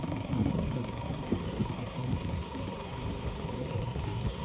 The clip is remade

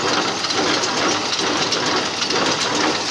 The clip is recorded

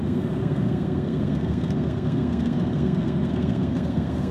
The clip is remade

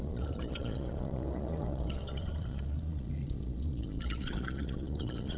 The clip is remade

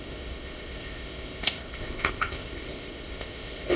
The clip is remade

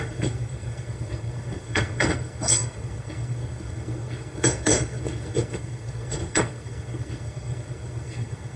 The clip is remade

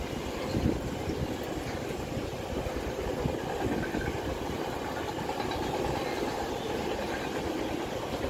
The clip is recorded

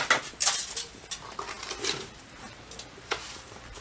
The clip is recorded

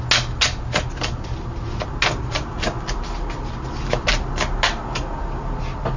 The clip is recorded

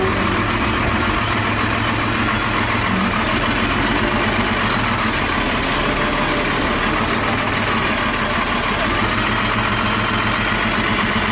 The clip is recorded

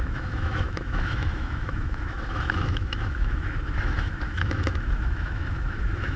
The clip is remade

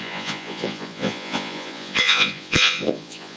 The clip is remade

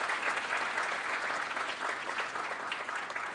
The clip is remade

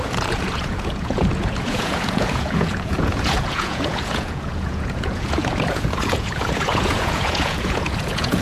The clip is remade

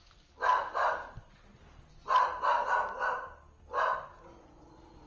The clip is recorded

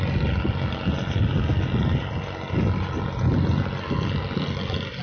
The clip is recorded